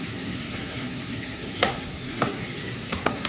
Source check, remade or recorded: remade